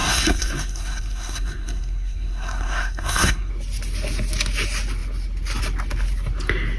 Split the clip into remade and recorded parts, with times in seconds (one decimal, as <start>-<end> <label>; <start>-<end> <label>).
0.0-3.5 remade; 3.5-6.8 recorded